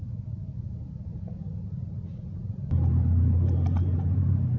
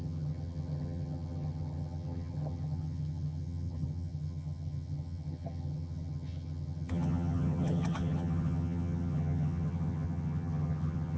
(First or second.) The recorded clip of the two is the first